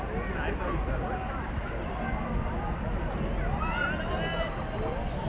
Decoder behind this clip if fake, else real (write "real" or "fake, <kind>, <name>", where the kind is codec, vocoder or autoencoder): real